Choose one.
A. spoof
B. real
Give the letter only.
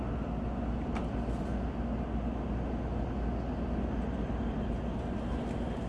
B